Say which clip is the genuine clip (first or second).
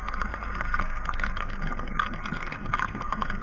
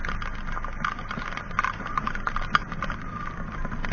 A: second